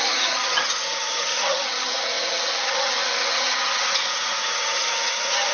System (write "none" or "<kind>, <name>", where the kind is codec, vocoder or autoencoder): vocoder, HiFi-GAN